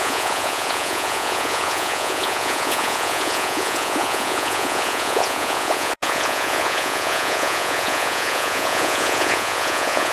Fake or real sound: fake